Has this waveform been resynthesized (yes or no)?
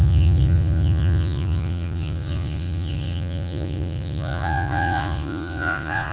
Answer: yes